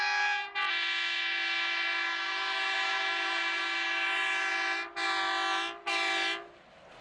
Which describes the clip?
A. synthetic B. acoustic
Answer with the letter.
B